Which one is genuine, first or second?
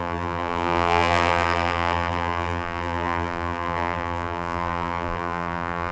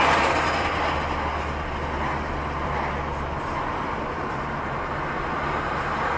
second